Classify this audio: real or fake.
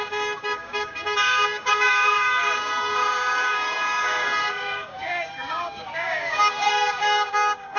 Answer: fake